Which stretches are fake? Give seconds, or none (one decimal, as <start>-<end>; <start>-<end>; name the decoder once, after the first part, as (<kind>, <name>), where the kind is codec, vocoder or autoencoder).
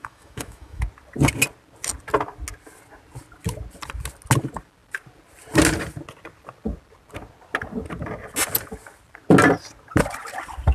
0.0-0.8 (autoencoder, DAC-VAE)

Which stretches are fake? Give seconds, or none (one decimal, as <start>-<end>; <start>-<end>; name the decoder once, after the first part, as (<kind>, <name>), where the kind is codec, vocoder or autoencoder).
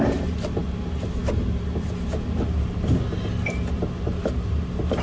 none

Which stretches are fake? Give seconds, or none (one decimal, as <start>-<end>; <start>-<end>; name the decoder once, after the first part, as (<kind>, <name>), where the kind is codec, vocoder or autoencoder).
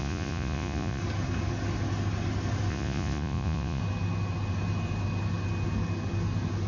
0.0-1.0 (vocoder, Vocos); 2.7-3.8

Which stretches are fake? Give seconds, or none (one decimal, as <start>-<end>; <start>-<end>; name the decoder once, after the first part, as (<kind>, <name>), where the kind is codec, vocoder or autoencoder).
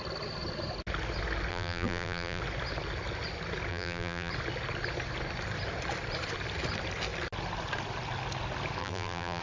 1.5-2.4 (vocoder, BigVGAN v2); 3.7-4.3; 8.8-9.4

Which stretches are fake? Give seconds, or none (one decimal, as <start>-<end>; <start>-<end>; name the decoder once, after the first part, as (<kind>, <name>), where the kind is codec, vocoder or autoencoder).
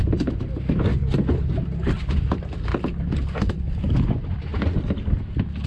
none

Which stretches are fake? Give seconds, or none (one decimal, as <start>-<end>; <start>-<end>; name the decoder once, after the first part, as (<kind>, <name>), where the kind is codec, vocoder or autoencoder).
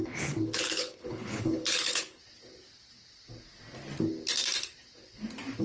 0.0-2.2 (codec, HILCodec)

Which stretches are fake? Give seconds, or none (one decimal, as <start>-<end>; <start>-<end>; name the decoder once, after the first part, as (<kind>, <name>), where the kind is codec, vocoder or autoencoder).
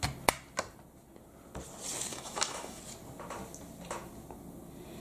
2.1-2.8 (autoencoder, DAC-VAE)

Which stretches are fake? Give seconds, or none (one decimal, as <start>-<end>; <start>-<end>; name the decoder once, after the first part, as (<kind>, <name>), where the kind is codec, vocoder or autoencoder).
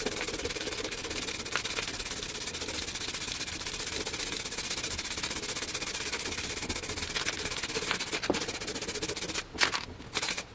8.8-9.6 (vocoder, BigVGAN v2)